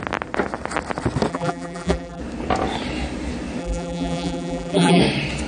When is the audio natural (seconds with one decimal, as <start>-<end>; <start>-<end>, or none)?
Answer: 0.0-1.3; 2.2-3.6; 5.0-5.5